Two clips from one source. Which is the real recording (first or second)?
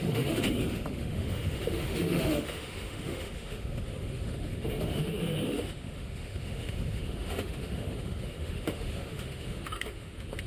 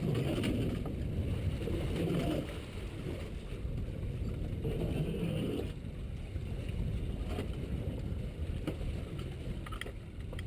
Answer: second